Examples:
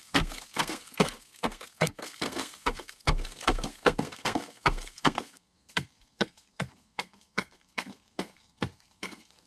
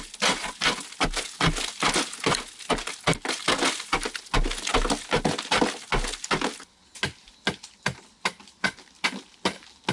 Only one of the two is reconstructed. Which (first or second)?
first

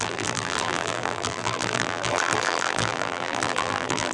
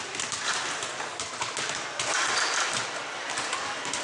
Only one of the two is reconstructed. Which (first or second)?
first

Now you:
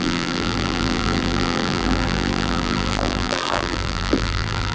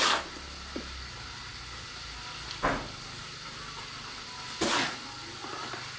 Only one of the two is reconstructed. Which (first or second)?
first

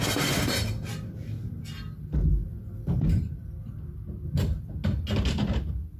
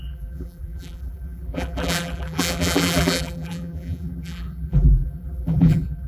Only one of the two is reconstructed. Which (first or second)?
second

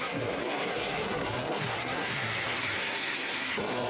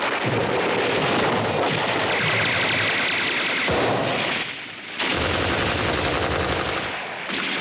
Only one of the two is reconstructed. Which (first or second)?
first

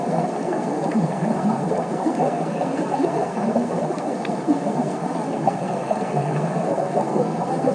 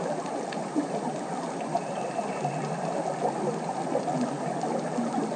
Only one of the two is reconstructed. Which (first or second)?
first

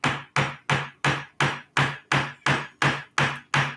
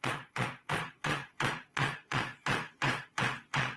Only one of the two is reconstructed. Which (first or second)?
second